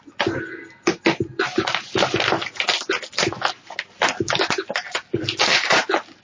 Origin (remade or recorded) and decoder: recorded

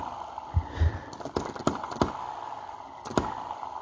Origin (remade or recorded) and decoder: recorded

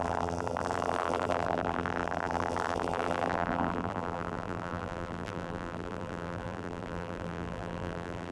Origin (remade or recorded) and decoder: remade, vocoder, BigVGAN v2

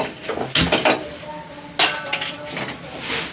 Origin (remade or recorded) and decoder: recorded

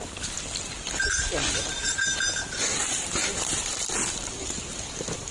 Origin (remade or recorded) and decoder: remade, vocoder, BigVGAN v2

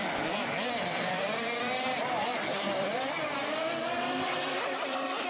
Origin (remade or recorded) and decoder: remade, vocoder, BigVGAN v2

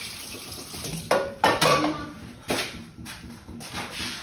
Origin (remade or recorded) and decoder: remade, vocoder, BigVGAN v2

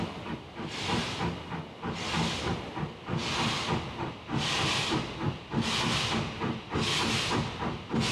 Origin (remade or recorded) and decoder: recorded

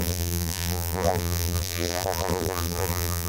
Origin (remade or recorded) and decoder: remade, vocoder, BigVGAN v2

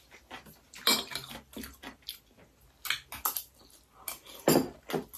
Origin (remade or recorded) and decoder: recorded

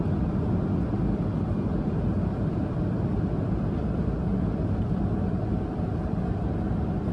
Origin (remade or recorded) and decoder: remade, vocoder, BigVGAN v2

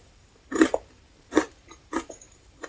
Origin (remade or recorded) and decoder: remade, vocoder, BigVGAN v2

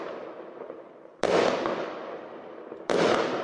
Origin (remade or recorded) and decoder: remade, vocoder, BigVGAN v2